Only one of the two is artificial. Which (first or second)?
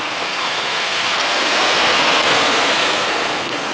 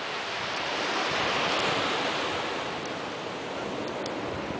first